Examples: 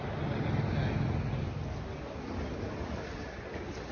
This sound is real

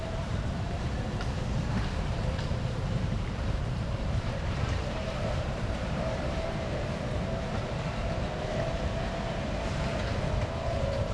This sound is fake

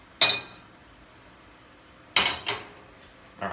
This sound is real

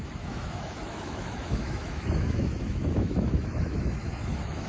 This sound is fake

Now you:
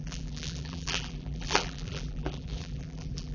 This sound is fake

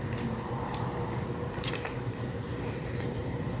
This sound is fake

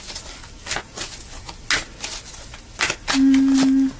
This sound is real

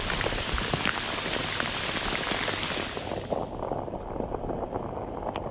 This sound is real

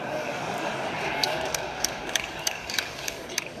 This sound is fake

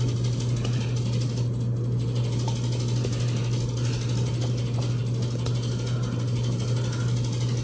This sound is real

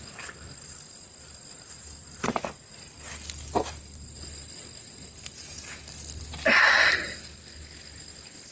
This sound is real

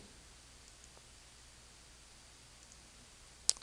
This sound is real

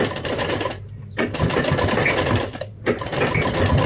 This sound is real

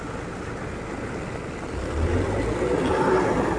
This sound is real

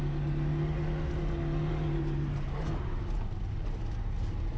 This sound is real